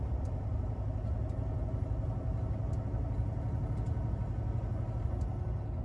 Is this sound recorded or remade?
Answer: recorded